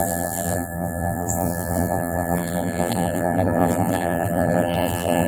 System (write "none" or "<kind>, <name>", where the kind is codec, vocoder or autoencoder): vocoder, BigVGAN v2